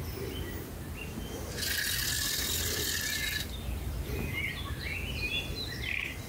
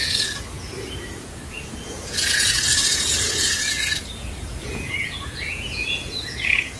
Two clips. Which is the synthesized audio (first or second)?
second